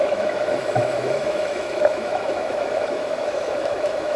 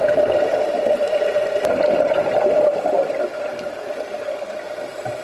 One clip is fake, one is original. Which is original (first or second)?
second